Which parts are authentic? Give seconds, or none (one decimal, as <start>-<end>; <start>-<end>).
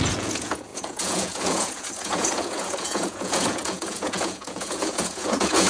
none